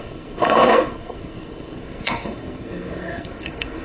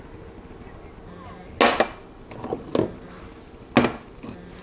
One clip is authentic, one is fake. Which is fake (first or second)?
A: first